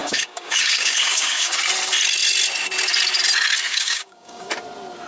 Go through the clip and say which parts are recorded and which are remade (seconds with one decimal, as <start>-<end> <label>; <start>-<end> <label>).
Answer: 0.0-1.6 remade; 1.6-3.7 recorded; 3.7-4.5 remade; 4.5-5.1 recorded